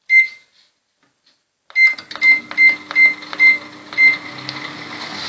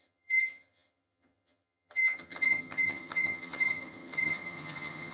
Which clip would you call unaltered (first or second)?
first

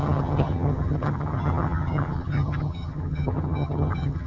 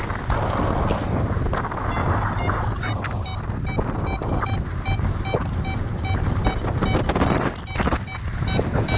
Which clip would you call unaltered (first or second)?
second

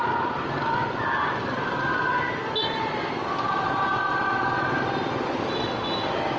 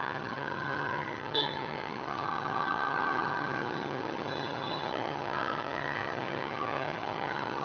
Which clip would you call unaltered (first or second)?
first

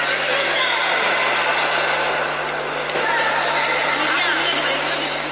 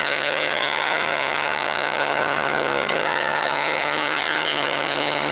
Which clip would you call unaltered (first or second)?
first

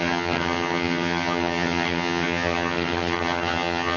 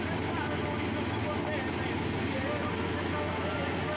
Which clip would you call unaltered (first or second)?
second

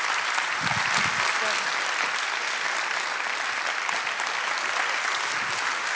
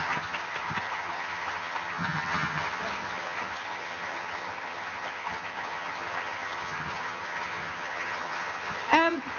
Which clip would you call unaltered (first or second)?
first